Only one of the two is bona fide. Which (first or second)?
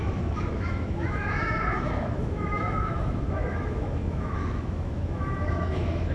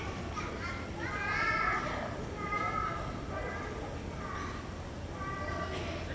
second